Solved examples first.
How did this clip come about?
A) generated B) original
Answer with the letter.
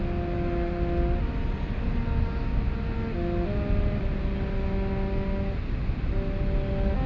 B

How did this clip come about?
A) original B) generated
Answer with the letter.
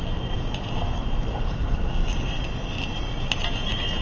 A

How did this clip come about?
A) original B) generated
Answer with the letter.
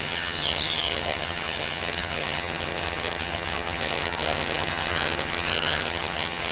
B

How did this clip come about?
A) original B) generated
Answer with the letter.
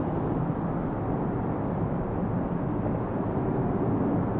A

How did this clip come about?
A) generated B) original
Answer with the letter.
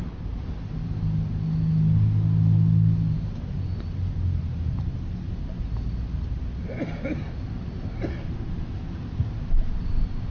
B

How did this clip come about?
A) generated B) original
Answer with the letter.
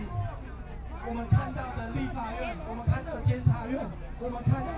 B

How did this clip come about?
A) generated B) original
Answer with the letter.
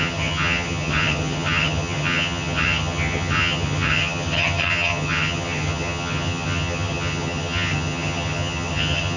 A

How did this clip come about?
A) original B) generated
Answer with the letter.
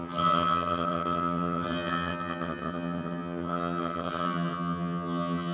B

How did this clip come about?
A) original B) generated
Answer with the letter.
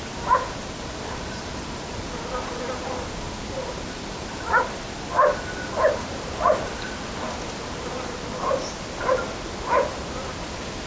A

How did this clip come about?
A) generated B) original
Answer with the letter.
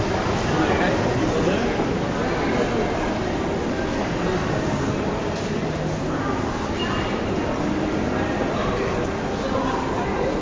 B